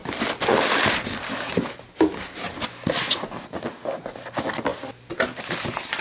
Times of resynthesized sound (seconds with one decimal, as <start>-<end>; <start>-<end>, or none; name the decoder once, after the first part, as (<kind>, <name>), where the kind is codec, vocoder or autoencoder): none

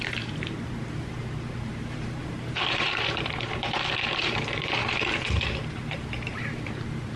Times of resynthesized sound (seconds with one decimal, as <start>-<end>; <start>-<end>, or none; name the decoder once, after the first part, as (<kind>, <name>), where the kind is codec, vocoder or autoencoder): 0.0-7.2 (vocoder, BigVGAN v2)

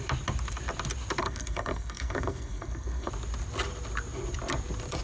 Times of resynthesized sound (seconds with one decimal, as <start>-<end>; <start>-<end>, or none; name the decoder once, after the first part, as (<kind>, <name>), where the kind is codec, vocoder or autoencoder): 1.2-3.1 (codec, SNAC)

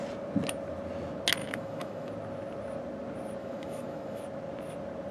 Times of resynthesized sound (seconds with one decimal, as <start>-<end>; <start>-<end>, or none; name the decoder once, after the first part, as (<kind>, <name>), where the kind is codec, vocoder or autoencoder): 1.4-2.1 (autoencoder, DAC-VAE); 3.4-4.2

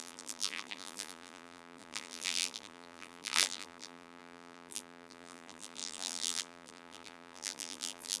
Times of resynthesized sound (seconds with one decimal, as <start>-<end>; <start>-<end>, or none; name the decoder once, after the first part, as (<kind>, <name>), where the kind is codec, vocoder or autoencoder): 0.0-8.2 (vocoder, BigVGAN v2)

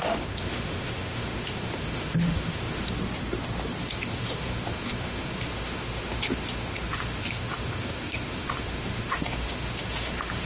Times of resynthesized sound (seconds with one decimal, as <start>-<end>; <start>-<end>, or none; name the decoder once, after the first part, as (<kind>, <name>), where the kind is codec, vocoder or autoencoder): 0.0-3.0 (autoencoder, DAC-VAE); 3.8-10.5